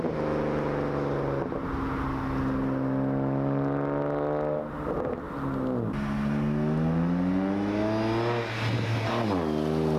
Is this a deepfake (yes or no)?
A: no